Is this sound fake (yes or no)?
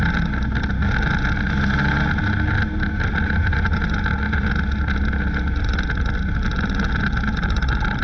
no